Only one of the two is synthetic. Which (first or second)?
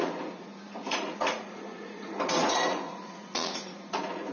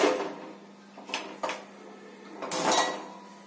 first